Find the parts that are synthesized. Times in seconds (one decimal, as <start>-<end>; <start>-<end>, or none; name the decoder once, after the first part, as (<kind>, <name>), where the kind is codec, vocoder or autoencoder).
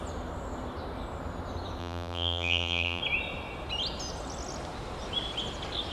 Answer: 1.8-3.0 (vocoder, BigVGAN v2)